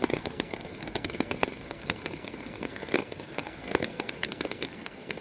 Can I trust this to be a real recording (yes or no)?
no